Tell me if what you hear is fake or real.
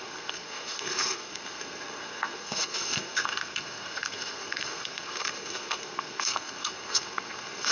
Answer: fake